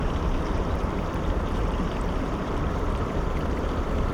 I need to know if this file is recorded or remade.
remade